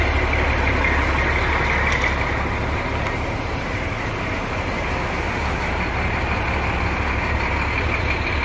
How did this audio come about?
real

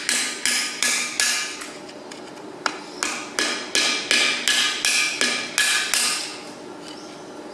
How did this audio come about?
real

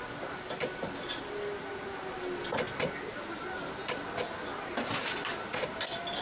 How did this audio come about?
real